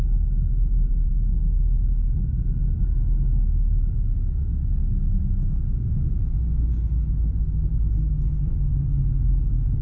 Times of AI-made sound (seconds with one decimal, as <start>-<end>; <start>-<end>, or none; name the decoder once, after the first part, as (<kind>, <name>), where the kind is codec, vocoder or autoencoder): none